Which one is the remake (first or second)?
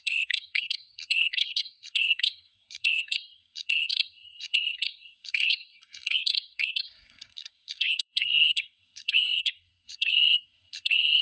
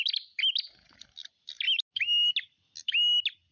first